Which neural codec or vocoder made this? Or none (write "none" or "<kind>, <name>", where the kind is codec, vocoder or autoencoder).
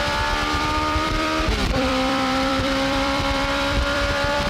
vocoder, BigVGAN v2